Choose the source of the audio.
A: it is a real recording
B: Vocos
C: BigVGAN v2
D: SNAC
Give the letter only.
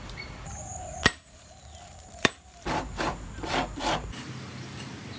C